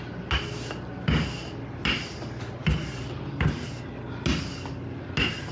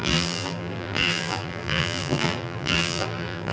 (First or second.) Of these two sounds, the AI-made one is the second